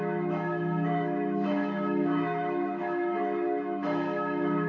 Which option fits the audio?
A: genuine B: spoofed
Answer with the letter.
B